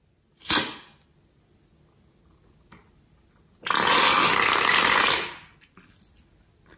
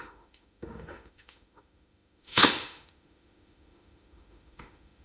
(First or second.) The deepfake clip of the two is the second